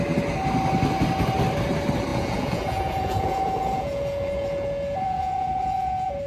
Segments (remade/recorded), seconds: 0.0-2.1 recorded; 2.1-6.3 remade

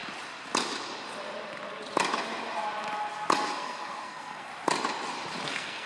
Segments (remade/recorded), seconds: 0.0-3.5 recorded; 3.5-4.5 remade; 4.5-5.5 recorded; 5.5-5.9 remade

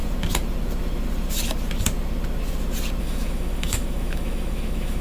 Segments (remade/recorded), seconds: 0.0-3.0 recorded; 3.0-5.0 remade

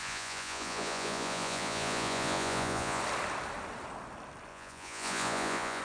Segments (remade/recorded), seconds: 0.0-3.0 remade; 3.0-4.5 recorded; 4.5-5.8 remade